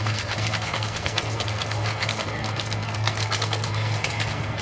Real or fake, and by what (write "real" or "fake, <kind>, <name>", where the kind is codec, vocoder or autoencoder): fake, codec, SNAC